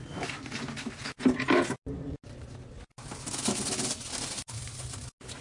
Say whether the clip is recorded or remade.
recorded